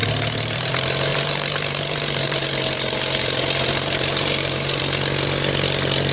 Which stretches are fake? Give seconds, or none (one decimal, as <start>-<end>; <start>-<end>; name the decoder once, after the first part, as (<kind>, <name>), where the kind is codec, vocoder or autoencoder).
0.0-0.7 (vocoder, BigVGAN v2); 1.1-4.8